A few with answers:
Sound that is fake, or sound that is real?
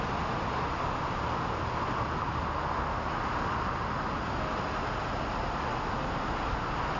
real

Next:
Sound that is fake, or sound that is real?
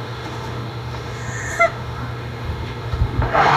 fake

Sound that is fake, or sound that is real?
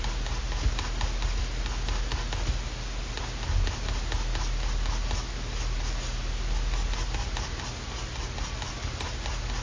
real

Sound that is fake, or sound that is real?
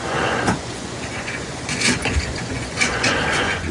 fake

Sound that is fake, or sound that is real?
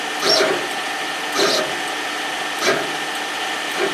fake